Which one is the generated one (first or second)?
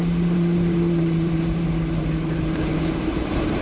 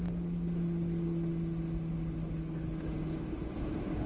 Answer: first